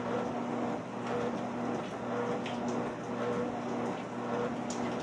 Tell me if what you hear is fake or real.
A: real